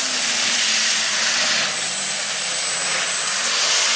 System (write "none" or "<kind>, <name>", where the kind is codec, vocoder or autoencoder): none